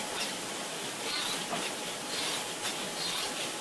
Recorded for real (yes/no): yes